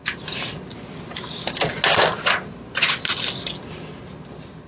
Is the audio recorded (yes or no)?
yes